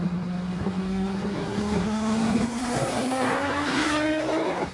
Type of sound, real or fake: fake